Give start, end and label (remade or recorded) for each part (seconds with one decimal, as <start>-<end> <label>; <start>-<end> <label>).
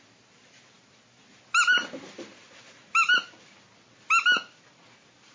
0.0-5.3 recorded